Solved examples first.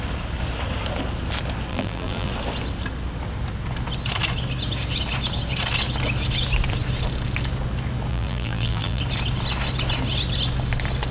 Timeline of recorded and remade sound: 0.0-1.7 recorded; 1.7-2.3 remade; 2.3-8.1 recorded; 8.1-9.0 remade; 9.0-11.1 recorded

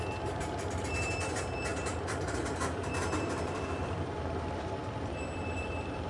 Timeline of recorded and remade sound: 0.0-6.1 remade

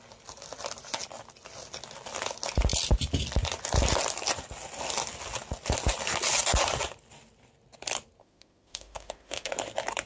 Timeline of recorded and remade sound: 0.0-8.2 recorded; 8.2-9.5 remade; 9.5-10.1 recorded

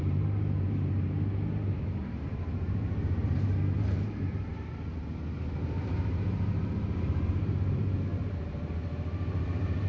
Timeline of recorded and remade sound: 0.0-8.1 remade; 8.1-9.4 recorded; 9.4-9.9 remade